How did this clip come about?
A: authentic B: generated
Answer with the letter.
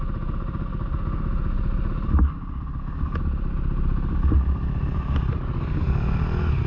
A